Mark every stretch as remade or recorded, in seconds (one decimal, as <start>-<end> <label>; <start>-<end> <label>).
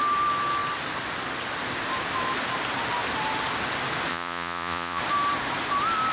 0.0-4.1 recorded; 4.1-5.0 remade; 5.0-6.1 recorded